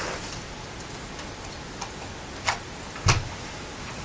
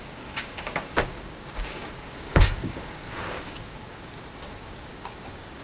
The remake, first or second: second